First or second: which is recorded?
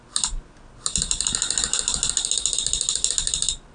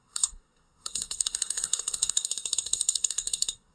first